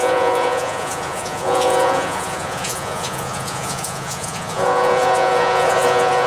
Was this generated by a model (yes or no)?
yes